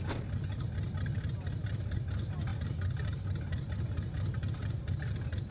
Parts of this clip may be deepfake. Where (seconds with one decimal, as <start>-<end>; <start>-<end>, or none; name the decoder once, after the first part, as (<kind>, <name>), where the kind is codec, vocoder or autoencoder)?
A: none